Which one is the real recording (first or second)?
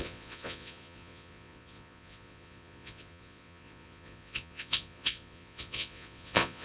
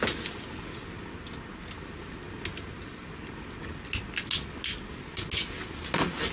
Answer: second